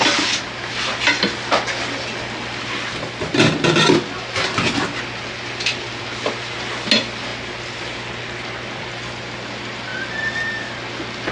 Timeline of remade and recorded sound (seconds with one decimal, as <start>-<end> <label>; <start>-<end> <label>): 0.0-11.3 recorded

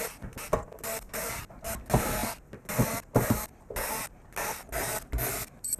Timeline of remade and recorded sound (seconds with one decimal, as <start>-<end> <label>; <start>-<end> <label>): 0.0-5.8 recorded

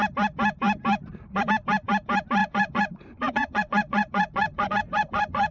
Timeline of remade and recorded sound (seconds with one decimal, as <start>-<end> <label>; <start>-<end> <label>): 0.0-2.4 recorded; 2.4-5.5 remade

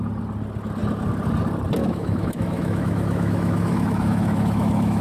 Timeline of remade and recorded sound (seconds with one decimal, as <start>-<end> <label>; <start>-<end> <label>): 0.0-1.8 recorded; 1.8-5.0 remade

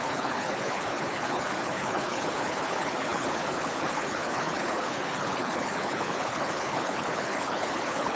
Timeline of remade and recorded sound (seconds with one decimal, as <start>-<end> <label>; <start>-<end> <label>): 0.0-8.2 remade

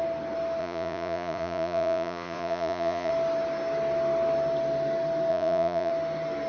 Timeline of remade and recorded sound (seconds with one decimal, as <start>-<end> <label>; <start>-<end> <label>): 0.0-0.6 recorded; 0.6-3.1 remade; 3.1-5.3 recorded; 5.3-5.9 remade; 5.9-6.5 recorded